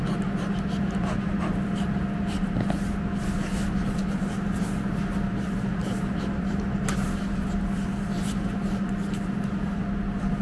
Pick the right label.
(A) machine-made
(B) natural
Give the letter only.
B